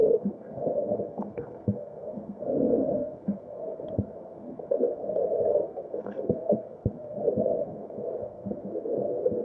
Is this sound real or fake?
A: fake